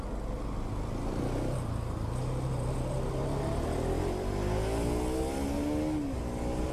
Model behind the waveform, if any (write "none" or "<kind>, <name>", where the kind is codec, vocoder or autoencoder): none